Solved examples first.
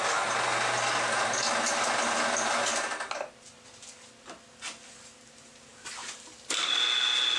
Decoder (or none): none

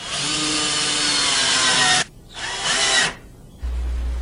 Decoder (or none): none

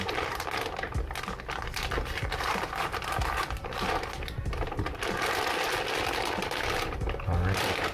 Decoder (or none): none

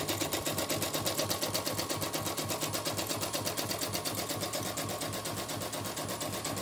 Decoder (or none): none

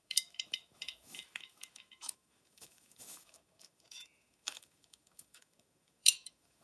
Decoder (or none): autoencoder, DAC-VAE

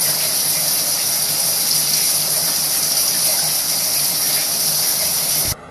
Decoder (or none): none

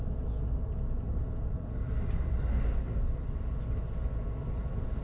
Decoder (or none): none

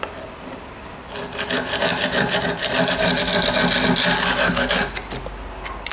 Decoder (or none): none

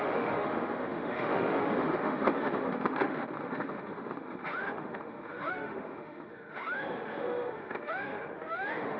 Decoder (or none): autoencoder, DAC-VAE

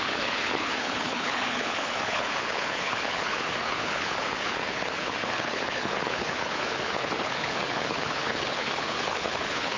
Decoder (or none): codec, HILCodec